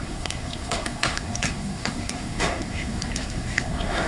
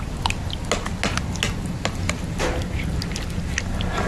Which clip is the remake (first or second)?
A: first